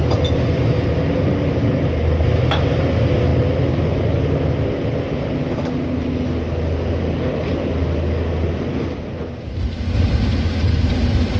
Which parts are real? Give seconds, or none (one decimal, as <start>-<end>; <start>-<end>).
0.0-11.4